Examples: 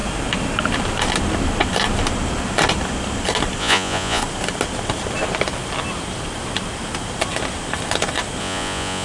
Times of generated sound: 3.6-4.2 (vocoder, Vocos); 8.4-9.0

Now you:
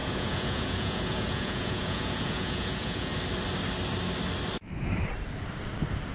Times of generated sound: 0.0-3.1 (vocoder, Vocos)

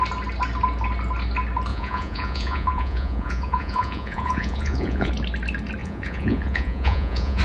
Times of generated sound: 1.7-5.1 (vocoder, Vocos); 5.8-7.4

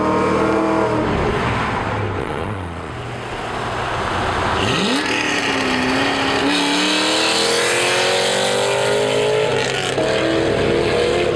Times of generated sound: 2.2-2.9 (vocoder, Vocos)

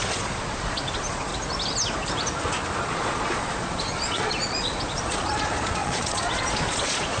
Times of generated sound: 0.0-1.3 (vocoder, Vocos); 2.8-7.2